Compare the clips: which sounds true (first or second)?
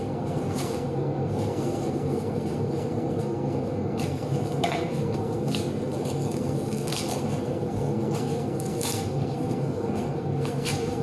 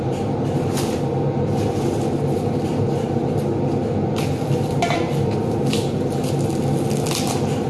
second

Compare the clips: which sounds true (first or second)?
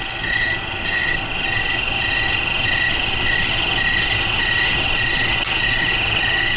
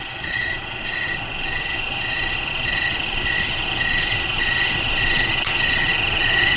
first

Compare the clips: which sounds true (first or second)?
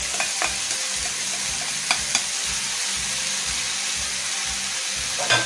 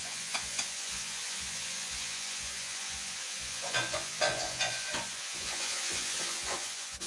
first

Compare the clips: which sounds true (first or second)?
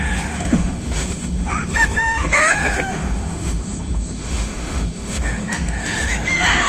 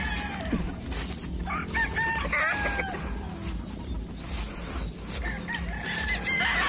second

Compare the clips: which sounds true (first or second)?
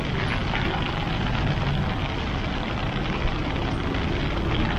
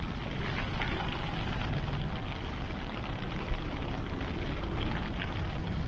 first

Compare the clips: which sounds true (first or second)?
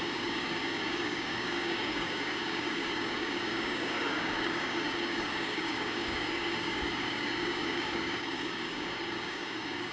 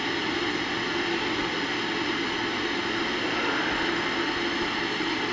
second